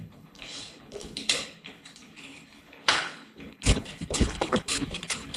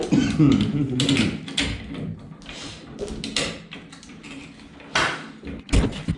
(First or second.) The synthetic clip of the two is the first